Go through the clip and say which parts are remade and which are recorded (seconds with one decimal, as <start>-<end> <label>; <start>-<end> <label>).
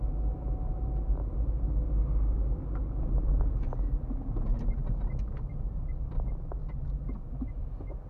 0.0-8.1 recorded